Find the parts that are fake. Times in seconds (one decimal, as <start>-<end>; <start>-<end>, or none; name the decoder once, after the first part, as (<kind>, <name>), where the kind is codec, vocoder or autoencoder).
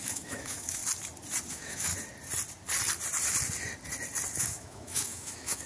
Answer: 0.0-0.8 (autoencoder, DAC-VAE); 1.5-1.9; 4.4-5.7